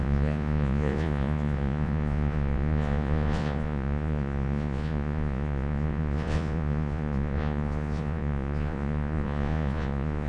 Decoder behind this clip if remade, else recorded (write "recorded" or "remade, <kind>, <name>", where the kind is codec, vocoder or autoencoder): remade, vocoder, Vocos